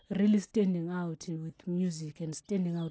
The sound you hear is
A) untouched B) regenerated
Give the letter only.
A